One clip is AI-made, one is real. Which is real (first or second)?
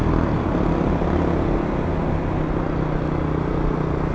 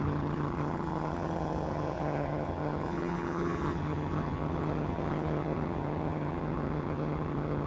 first